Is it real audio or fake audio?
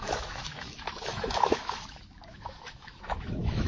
fake